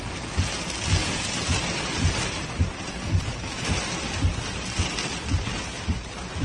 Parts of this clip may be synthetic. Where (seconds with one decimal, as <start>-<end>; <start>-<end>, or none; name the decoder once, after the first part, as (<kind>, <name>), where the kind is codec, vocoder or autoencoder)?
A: 1.0-4.8 (vocoder, BigVGAN v2)